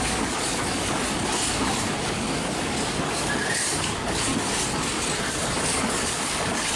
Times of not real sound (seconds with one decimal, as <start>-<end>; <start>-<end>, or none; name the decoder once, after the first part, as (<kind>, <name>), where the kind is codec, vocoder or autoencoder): 0.0-1.0 (codec, DAC); 1.5-4.3; 5.3-6.8

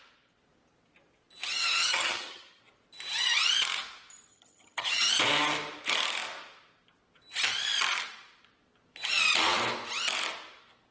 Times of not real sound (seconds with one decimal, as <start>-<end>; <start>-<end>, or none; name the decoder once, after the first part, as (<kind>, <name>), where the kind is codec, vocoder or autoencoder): 1.5-2.6 (vocoder, HiFi-GAN); 4.3-5.1

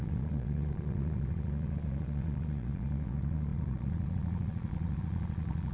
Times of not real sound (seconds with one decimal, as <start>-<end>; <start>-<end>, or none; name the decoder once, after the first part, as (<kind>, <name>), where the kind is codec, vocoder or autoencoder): 0.0-5.7 (vocoder, Vocos)

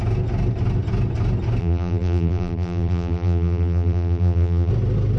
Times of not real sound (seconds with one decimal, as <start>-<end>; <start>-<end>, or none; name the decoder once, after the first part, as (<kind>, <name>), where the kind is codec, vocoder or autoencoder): 1.6-4.7 (vocoder, BigVGAN v2)

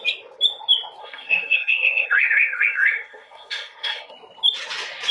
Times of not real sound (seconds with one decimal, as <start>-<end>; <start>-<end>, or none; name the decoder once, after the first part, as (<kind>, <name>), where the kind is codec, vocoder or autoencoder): 1.0-4.1 (codec, SNAC)

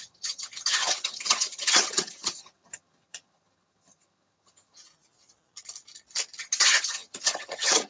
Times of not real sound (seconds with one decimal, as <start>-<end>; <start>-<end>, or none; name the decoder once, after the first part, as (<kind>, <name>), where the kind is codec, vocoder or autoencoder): 0.0-4.8 (vocoder, HiFi-GAN); 6.4-7.9